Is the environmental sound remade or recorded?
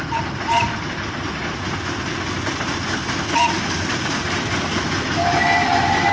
recorded